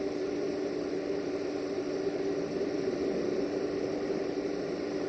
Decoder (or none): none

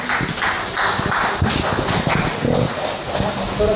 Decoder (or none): none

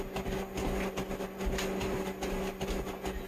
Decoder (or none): none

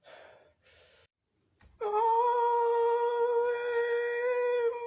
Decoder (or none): none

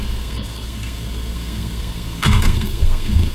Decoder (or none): codec, SNAC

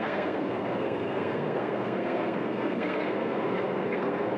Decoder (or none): codec, SNAC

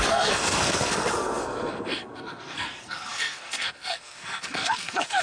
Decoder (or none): codec, SNAC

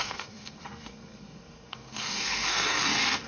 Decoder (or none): codec, SNAC